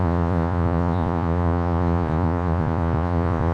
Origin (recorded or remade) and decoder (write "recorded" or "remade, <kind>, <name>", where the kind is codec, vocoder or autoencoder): remade, vocoder, Vocos